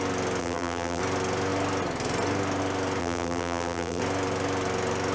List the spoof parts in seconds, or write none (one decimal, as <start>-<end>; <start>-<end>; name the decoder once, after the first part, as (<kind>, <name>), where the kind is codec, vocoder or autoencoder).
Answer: 0.4-1.0 (vocoder, BigVGAN v2); 3.0-4.0